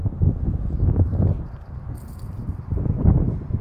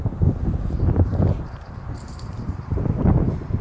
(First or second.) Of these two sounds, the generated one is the second